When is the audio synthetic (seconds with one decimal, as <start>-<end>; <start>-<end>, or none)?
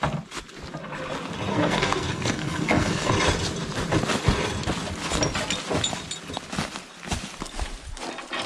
1.5-3.1